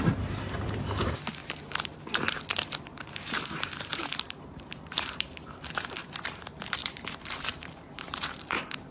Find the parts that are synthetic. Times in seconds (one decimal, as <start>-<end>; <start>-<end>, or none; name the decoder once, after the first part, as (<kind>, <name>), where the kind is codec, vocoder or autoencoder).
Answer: 1.4-6.0 (vocoder, BigVGAN v2); 6.8-8.9